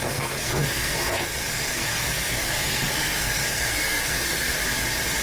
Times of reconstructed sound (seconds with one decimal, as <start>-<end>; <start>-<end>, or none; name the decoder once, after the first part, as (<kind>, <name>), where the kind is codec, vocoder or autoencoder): 0.0-4.6 (codec, SNAC)